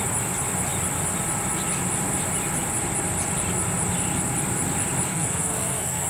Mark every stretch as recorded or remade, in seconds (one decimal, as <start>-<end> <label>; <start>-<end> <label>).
0.0-5.1 recorded; 5.1-6.1 remade